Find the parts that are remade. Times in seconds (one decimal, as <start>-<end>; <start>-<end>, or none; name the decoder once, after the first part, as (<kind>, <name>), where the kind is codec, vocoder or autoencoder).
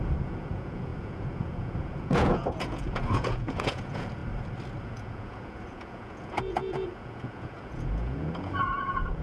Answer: 0.0-4.2 (vocoder, Vocos); 4.8-9.2